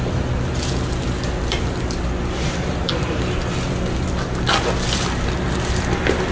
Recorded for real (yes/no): yes